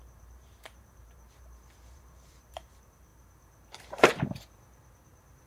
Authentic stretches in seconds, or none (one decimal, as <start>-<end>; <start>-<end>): none